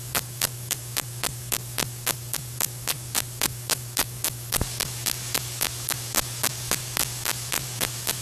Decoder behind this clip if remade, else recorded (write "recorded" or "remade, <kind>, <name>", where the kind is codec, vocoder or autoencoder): remade, codec, DAC